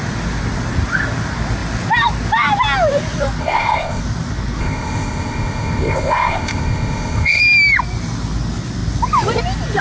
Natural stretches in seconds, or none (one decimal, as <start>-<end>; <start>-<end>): 0.0-3.4; 4.0-4.6; 7.4-9.8